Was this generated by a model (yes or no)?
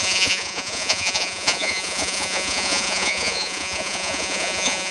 yes